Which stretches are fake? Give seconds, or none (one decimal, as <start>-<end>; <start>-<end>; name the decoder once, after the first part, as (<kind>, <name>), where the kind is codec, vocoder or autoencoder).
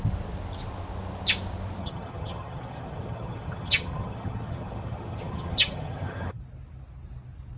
1.8-6.4 (vocoder, HiFi-GAN)